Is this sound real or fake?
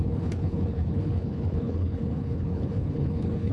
fake